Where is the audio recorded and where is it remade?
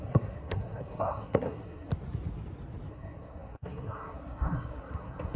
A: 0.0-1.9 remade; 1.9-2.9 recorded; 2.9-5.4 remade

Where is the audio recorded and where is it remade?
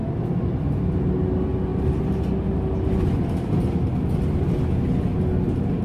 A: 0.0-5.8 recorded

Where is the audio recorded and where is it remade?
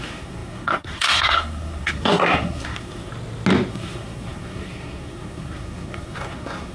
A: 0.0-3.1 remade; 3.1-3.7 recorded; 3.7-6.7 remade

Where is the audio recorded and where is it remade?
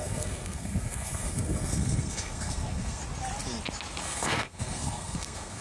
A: 0.0-3.0 remade; 3.0-4.0 recorded; 4.0-5.6 remade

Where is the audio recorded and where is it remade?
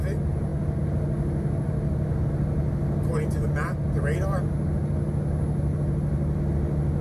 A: 0.0-7.0 recorded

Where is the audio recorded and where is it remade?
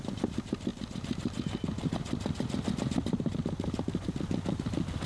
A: 0.0-5.1 recorded